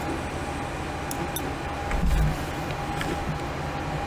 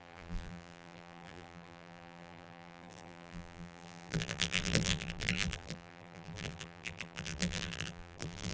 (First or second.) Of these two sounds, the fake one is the second